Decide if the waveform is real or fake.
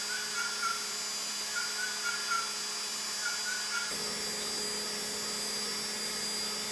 real